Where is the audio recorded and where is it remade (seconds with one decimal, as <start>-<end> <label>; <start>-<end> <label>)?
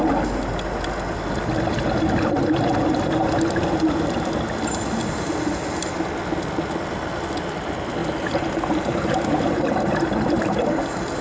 0.0-8.0 recorded; 8.0-10.7 remade; 10.7-11.2 recorded